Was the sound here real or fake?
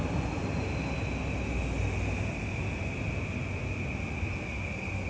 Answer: real